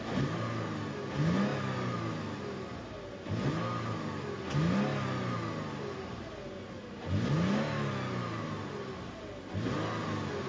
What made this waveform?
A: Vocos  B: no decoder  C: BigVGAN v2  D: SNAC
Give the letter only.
B